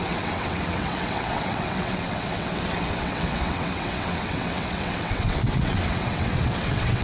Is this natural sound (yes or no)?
no